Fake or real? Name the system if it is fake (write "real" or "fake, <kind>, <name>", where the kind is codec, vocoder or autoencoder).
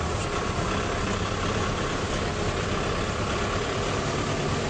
real